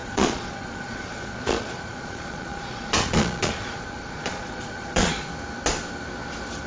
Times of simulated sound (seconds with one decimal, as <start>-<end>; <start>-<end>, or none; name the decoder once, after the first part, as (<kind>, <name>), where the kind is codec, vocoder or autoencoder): 0.0-5.3 (vocoder, Vocos)